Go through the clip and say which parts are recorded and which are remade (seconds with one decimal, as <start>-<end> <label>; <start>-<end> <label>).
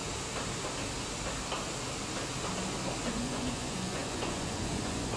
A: 0.0-3.1 recorded; 3.1-5.2 remade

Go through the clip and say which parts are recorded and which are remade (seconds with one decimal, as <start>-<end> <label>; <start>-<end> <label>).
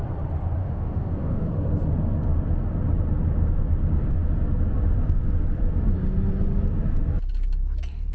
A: 0.0-0.6 recorded; 0.6-1.5 remade; 1.5-8.1 recorded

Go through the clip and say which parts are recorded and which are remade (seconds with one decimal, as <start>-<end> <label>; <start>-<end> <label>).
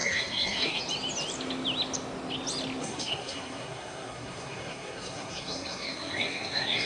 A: 0.0-0.8 remade; 0.8-2.8 recorded; 2.8-6.9 remade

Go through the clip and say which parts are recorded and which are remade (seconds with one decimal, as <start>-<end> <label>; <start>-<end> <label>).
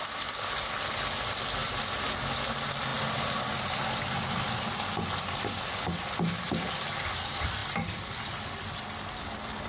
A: 0.0-9.7 recorded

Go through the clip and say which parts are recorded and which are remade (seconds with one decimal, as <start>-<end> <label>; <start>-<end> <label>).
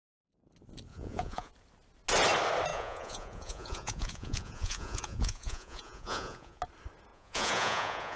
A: 0.0-0.9 recorded; 0.9-1.5 remade; 1.5-2.7 recorded; 2.7-6.6 remade; 6.6-7.1 recorded; 7.1-8.2 remade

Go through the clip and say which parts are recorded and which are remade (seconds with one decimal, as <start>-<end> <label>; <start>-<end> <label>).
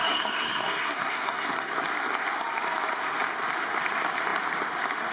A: 0.0-1.7 remade; 1.7-5.1 recorded